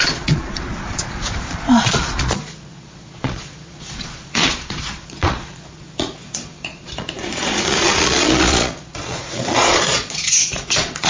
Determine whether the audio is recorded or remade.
remade